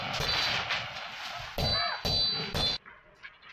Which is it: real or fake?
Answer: real